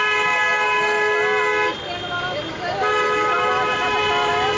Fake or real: real